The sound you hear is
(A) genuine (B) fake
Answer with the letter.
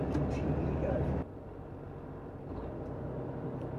A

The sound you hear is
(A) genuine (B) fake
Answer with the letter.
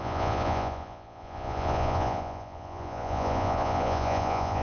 B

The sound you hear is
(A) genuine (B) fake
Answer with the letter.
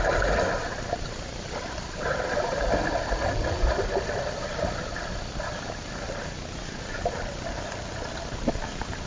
A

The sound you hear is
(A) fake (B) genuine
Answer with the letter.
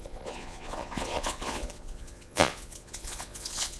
A